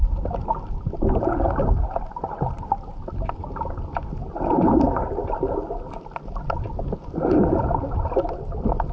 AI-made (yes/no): no